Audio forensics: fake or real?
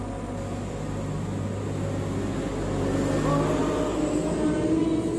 real